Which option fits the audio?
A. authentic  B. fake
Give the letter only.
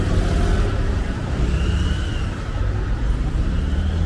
A